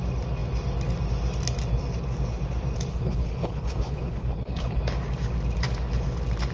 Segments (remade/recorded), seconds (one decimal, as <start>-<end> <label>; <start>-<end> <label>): 0.0-2.9 recorded; 2.9-4.8 remade; 4.8-6.5 recorded